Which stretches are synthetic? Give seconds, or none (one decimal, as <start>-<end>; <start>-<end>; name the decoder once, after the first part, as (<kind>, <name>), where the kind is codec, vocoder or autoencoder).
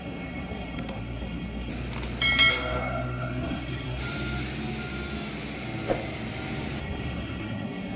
0.0-1.7 (codec, SNAC); 2.5-4.0; 6.8-8.0